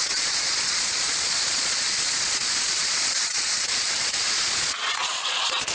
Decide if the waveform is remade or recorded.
remade